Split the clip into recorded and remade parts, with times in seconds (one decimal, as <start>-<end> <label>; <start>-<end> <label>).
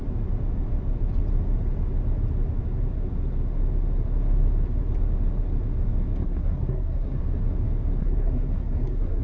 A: 0.0-6.2 recorded; 6.2-7.2 remade; 7.2-8.0 recorded; 8.0-9.2 remade